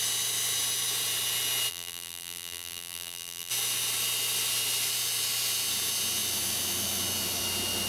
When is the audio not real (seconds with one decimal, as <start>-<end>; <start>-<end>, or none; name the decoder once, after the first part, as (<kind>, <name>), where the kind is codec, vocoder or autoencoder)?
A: 1.7-3.5 (vocoder, BigVGAN v2)